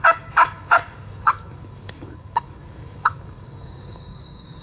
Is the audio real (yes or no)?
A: no